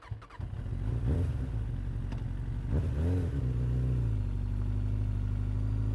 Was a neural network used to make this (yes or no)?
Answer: no